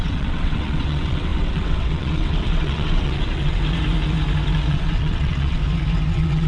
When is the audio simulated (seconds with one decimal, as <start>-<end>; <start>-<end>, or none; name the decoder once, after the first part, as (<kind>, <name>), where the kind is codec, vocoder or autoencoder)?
0.0-3.6 (vocoder, WaveNeXt); 4.7-5.6; 6.1-6.5